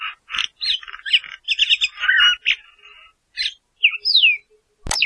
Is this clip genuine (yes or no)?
yes